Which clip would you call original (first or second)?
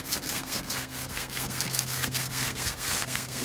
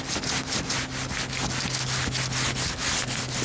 second